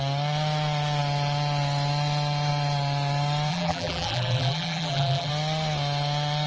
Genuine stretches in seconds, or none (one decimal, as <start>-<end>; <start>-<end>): 0.0-3.5; 5.3-6.5

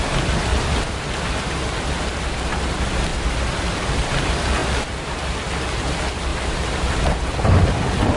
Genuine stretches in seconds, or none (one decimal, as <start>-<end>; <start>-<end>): 0.0-0.5; 1.0-4.6; 5.2-6.3; 7.0-8.2

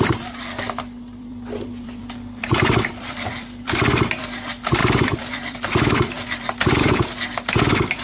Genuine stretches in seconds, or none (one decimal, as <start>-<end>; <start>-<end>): none

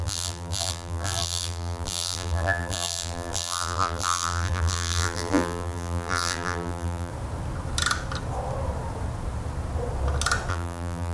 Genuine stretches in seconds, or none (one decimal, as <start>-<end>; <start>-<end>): 7.1-10.5